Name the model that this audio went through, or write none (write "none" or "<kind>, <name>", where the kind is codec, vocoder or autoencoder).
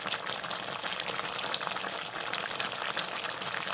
none